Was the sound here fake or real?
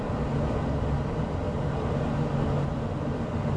real